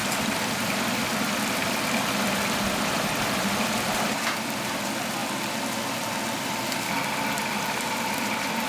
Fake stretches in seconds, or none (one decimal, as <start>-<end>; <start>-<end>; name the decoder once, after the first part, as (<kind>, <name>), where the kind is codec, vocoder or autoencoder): 0.0-4.0 (vocoder, BigVGAN v2)